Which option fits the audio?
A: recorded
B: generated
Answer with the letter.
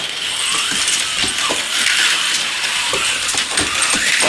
A